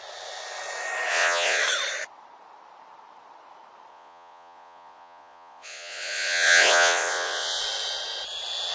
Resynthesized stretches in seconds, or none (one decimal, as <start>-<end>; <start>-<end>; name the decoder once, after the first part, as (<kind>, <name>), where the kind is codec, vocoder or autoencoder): 1.1-1.6 (vocoder, Vocos); 3.9-7.6